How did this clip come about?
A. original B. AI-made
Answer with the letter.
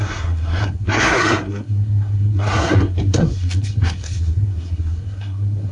B